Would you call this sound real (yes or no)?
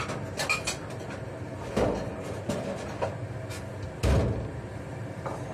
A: yes